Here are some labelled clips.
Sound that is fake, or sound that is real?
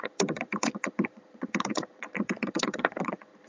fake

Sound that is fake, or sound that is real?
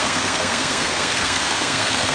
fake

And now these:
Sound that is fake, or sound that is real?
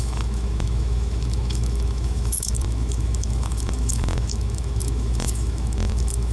fake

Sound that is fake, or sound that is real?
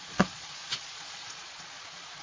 fake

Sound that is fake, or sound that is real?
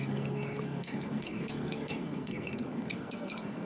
fake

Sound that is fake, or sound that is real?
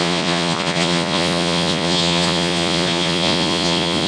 fake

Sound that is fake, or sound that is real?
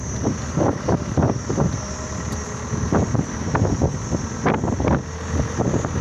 real